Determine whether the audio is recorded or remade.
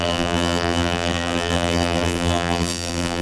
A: remade